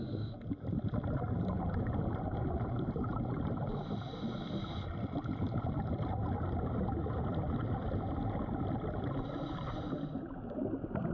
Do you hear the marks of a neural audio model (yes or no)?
no